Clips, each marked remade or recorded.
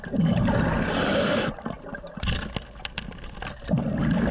recorded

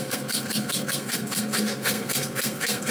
remade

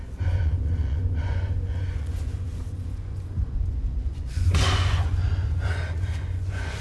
remade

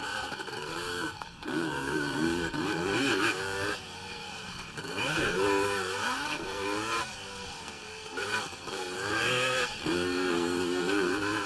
remade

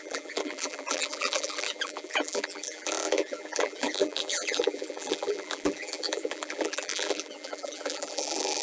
remade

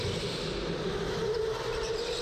recorded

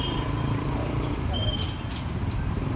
recorded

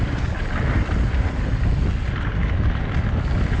recorded